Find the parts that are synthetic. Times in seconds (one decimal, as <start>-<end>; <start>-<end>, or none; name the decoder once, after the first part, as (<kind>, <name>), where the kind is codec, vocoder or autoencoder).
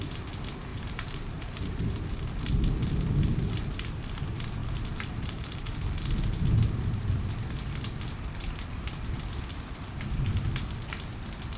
0.7-1.8 (vocoder, BigVGAN v2); 4.6-6.4